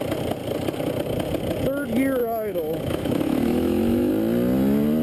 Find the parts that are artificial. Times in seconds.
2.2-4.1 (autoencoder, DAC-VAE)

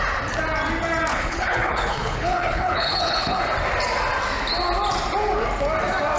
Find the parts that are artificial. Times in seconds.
1.1-3.4 (codec, HILCodec)

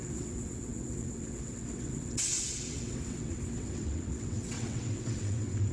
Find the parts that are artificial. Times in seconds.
0.0-5.7 (vocoder, WaveNeXt)

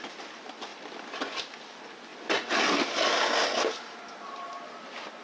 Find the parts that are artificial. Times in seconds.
0.7-1.2 (vocoder, BigVGAN v2)

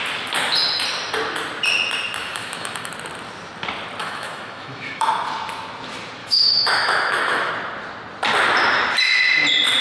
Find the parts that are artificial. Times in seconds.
2.2-2.9 (autoencoder, DAC-VAE); 4.0-5.1; 6.2-7.5

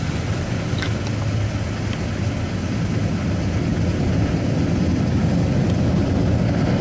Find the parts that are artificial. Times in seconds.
none

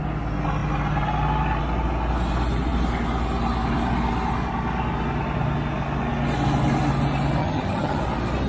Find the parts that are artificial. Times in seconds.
7.4-8.0 (vocoder, HiFi-GAN)